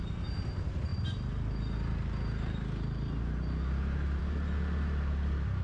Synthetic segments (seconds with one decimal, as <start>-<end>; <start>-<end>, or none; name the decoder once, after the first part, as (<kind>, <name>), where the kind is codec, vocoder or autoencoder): none